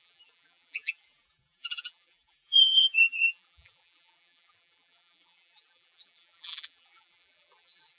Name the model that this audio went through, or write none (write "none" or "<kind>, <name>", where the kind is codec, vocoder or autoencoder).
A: vocoder, BigVGAN v2